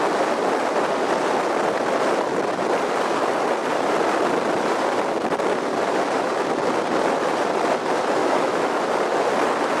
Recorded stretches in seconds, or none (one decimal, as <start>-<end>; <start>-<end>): 0.0-8.2; 8.8-9.8